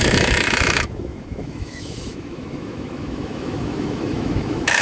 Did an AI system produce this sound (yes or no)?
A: yes